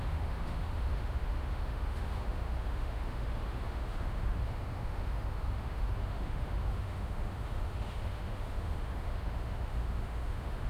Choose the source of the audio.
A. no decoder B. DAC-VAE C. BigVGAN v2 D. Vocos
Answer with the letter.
B